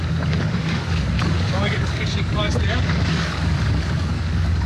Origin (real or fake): fake